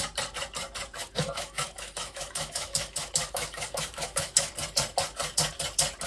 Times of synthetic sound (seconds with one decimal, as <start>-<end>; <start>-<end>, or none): 1.0-4.5